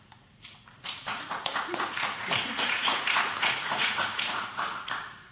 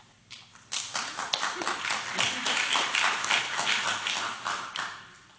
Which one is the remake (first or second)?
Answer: first